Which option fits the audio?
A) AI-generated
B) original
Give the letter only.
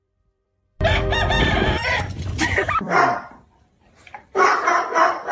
A